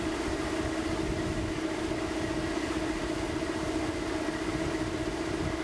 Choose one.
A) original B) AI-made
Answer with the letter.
A